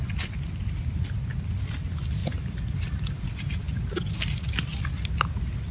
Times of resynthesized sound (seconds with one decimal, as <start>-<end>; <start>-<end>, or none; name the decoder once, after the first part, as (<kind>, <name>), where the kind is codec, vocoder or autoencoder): 2.2-4.1 (vocoder, BigVGAN v2)